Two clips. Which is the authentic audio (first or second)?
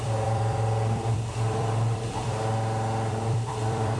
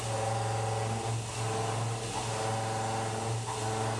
second